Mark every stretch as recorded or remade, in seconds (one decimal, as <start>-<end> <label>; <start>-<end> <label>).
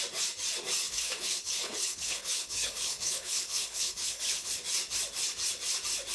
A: 0.0-0.8 recorded; 0.8-4.5 remade; 4.5-6.1 recorded